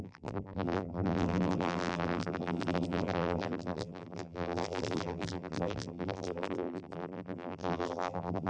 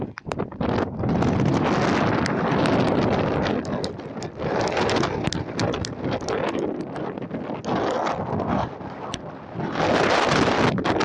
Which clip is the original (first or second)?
second